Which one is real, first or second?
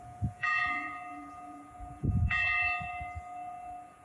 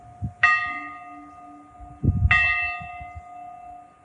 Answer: second